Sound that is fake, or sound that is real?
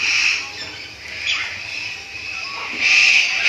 real